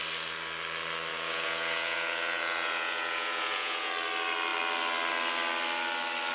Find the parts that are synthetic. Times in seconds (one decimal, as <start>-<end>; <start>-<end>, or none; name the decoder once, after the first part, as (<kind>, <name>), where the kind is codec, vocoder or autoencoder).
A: 1.1-3.9 (vocoder, Vocos)